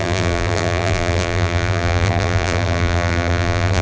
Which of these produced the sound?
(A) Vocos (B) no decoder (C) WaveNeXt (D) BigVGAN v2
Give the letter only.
D